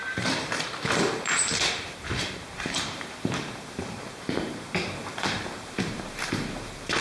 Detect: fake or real fake